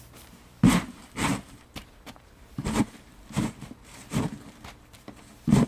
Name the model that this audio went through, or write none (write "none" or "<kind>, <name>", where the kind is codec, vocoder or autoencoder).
vocoder, BigVGAN v2